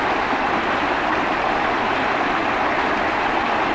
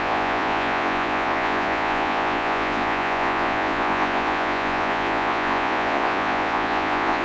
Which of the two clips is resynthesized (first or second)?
second